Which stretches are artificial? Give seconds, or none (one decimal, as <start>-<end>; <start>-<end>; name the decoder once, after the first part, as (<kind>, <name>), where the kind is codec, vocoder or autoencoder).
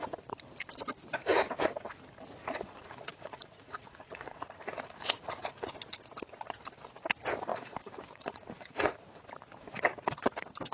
2.4-5.7 (vocoder, Vocos); 7.5-9.2